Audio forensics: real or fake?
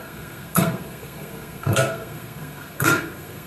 fake